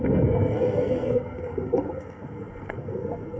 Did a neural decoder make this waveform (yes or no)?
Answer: yes